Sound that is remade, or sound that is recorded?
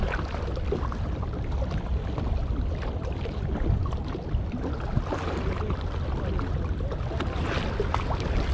recorded